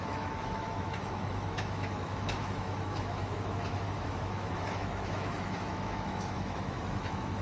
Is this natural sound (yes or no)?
no